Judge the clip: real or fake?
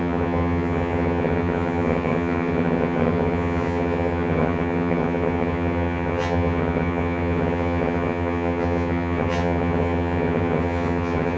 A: fake